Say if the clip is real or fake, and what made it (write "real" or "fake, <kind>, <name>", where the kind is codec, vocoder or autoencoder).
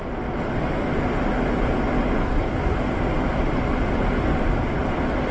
real